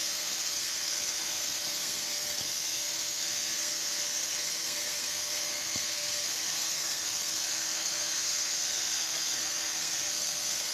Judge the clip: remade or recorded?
remade